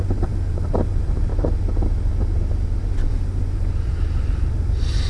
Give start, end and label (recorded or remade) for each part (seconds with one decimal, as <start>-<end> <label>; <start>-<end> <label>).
0.0-1.3 remade; 1.3-3.1 recorded; 3.1-5.1 remade